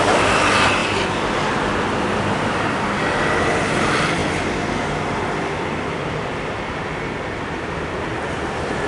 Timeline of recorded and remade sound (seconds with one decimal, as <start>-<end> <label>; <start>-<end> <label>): 0.0-4.2 remade; 4.2-4.9 recorded; 4.9-8.9 remade